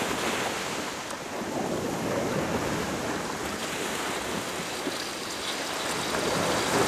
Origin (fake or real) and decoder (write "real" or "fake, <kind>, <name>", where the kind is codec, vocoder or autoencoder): real